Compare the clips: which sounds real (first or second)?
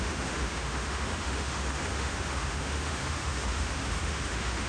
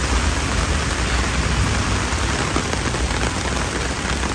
second